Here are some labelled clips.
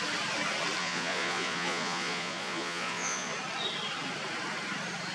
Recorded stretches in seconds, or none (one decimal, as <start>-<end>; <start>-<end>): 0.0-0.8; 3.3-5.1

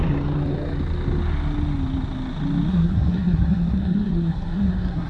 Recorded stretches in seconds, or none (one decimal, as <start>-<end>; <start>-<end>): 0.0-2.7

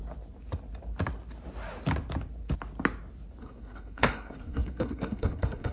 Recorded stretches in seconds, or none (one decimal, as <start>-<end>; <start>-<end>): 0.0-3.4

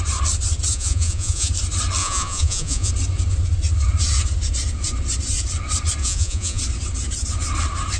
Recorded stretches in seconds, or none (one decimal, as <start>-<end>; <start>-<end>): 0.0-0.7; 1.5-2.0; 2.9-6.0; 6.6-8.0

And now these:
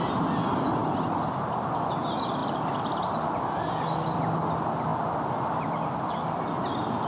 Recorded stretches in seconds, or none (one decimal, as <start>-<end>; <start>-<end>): 0.0-2.4; 2.9-4.9; 6.4-7.1

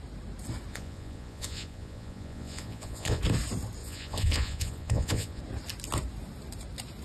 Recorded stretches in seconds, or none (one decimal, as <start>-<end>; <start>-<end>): 0.0-0.7; 3.2-3.8; 5.4-7.0

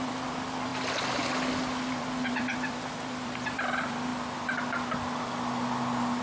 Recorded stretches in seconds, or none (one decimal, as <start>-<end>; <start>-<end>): 0.7-1.9; 4.1-6.2